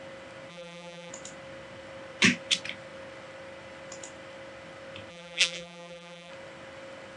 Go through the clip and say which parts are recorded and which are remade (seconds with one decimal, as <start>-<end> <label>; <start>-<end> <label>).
0.0-0.5 recorded; 0.5-1.1 remade; 1.1-5.1 recorded; 5.1-6.3 remade; 6.3-7.2 recorded